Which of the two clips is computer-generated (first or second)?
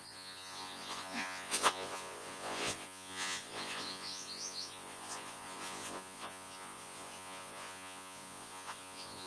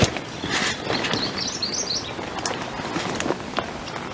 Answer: first